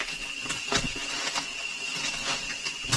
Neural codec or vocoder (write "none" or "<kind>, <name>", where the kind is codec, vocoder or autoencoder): vocoder, Vocos